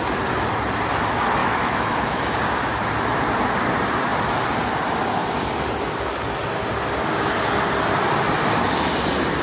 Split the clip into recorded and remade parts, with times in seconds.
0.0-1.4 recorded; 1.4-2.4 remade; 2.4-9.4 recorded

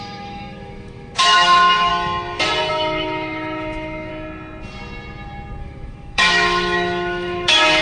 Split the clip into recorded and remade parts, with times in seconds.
0.0-1.9 remade; 1.9-2.7 recorded; 2.7-4.1 remade; 4.1-5.6 recorded; 5.6-7.8 remade

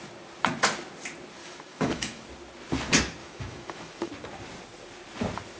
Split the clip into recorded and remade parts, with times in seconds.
0.0-1.4 recorded; 1.4-2.2 remade; 2.2-3.2 recorded; 3.2-4.1 remade; 4.1-5.6 recorded

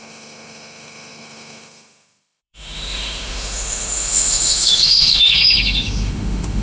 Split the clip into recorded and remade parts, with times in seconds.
0.0-6.6 remade

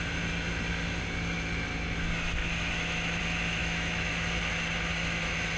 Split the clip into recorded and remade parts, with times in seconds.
0.0-2.4 recorded; 2.4-3.2 remade; 3.2-3.6 recorded; 3.6-4.1 remade; 4.1-5.6 recorded